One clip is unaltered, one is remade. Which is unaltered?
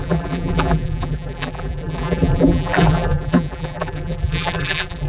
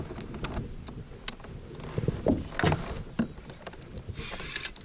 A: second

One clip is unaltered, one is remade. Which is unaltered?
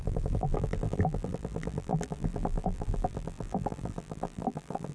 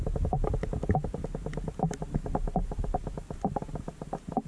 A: second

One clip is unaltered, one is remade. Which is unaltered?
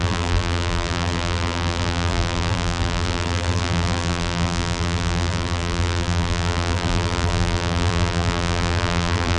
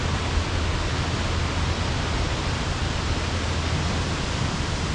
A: second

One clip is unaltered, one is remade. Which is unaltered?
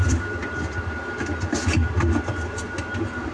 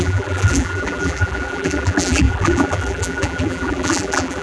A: first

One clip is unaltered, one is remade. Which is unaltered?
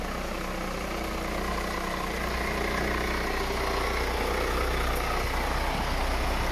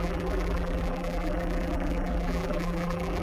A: first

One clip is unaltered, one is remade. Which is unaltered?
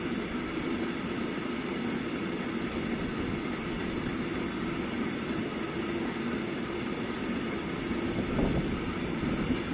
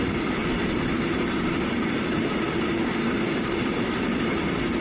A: first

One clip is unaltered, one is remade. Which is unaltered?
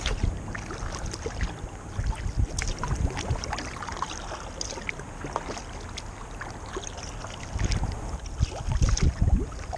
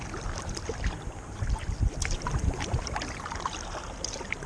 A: first